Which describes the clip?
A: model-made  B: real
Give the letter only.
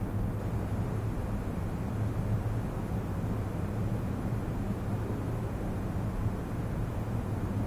B